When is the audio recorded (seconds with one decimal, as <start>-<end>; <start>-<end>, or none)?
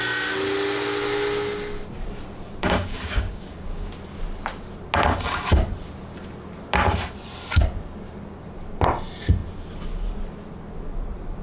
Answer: 0.0-2.6; 3.9-11.4